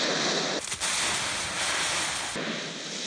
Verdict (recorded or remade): recorded